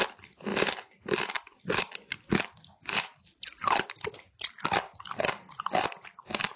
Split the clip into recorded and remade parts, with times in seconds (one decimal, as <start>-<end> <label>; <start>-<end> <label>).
0.0-6.6 recorded